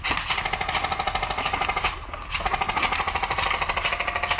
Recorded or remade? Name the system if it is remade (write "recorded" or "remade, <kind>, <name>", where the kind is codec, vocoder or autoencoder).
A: recorded